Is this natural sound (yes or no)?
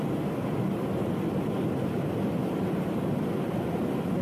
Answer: yes